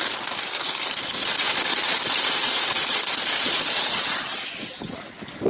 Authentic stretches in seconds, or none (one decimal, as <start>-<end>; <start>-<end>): 0.0-1.7; 4.5-5.5